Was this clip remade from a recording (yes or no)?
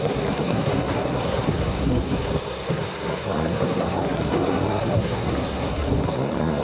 yes